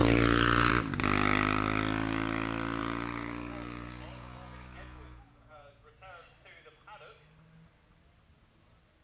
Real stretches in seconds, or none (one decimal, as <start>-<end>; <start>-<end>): 0.7-2.8; 5.9-9.0